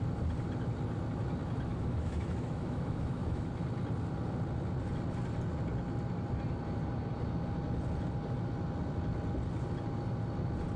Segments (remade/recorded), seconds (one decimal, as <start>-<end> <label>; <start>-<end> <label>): 0.0-1.7 recorded; 1.7-3.5 remade; 3.5-10.8 recorded